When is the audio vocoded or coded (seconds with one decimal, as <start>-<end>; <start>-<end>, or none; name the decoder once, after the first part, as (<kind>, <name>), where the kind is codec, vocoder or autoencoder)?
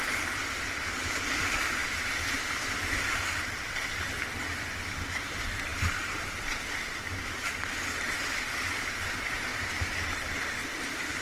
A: 0.0-1.8 (vocoder, BigVGAN v2); 3.1-11.2